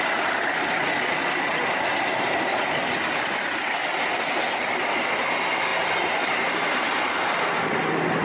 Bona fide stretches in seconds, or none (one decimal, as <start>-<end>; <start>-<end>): 0.0-8.2